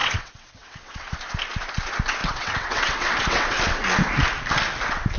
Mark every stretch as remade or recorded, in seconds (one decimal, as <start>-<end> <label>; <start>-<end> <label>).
0.0-1.1 remade; 1.1-2.2 recorded; 2.2-3.6 remade; 3.6-5.2 recorded